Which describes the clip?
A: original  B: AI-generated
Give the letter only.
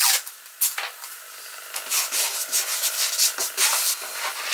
A